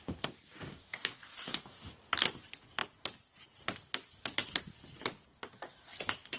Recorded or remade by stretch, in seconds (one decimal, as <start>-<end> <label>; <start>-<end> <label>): 0.0-0.7 recorded; 0.7-1.9 remade; 1.9-6.4 recorded